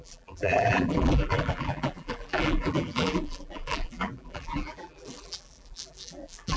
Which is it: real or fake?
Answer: fake